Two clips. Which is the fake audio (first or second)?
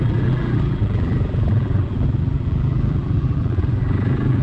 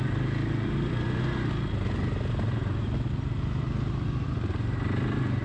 first